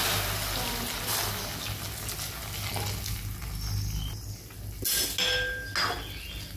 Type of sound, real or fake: real